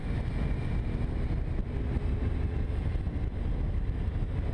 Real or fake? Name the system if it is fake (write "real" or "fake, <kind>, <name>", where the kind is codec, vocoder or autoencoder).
real